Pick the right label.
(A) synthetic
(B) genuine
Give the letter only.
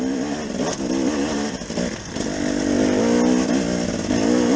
B